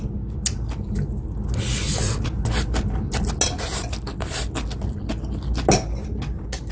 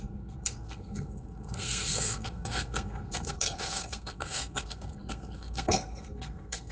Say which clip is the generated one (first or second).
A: second